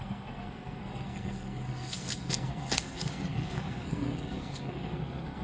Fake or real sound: fake